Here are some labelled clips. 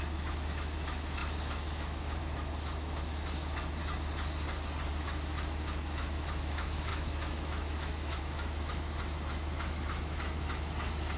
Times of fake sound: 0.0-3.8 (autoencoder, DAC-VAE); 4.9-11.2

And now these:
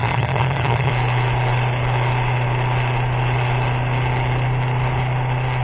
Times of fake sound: 0.0-0.9 (vocoder, HiFi-GAN)

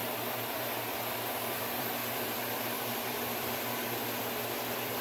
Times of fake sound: 1.6-5.0 (vocoder, BigVGAN v2)

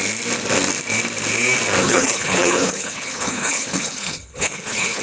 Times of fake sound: 1.8-5.0 (codec, HILCodec)

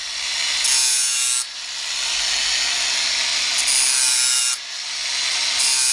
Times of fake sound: none

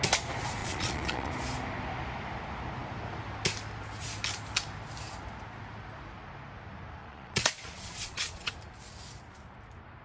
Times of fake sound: 0.6-1.3 (vocoder, Vocos); 7.0-8.5

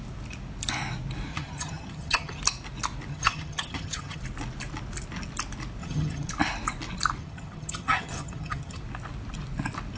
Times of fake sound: 1.3-2.4 (vocoder, HiFi-GAN); 3.1-4.2; 5.8-6.3; 7.2-8.8